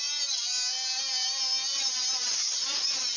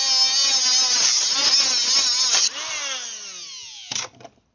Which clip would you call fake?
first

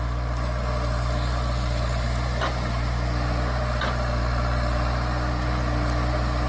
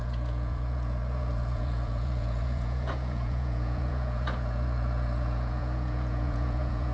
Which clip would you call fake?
second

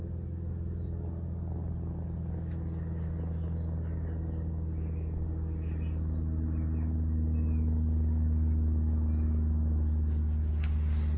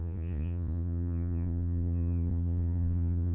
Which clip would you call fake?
second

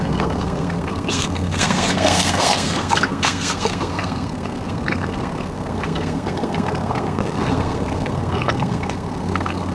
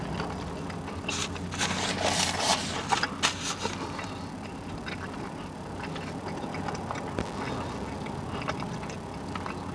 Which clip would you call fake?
first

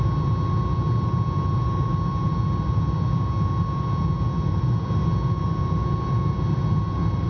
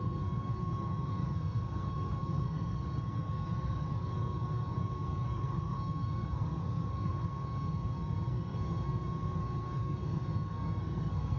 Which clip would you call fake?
second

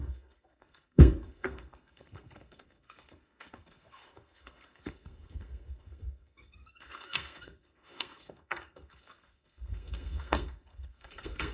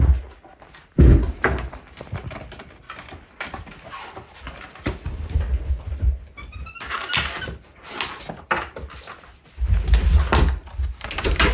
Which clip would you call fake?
first